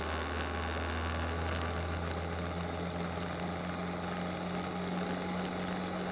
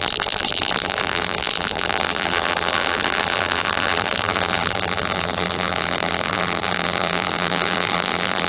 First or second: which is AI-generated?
second